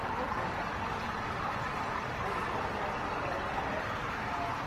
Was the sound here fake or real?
real